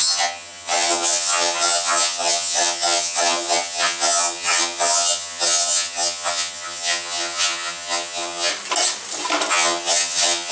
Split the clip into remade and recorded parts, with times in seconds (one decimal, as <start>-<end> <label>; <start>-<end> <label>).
0.0-8.5 remade; 8.5-9.5 recorded; 9.5-10.5 remade